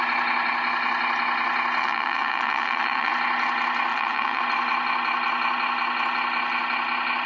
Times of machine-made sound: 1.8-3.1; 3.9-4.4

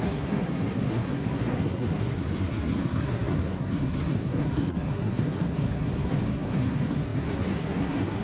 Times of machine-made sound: 0.0-8.2

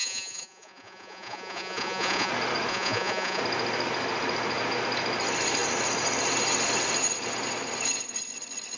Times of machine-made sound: 0.0-2.3; 2.7-3.4

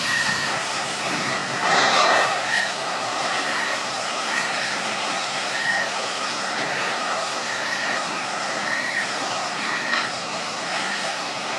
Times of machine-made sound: 0.0-11.6

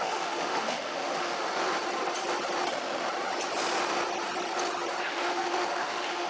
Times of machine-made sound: 0.0-1.5; 5.0-6.3

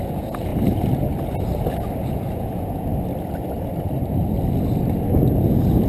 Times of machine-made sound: 0.0-0.5; 2.1-2.9; 5.3-5.9

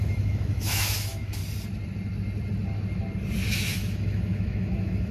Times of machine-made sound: 0.0-1.4; 3.5-5.1